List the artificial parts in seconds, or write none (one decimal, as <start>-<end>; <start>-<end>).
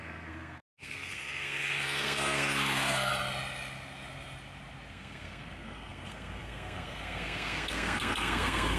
0.0-3.1; 4.9-8.8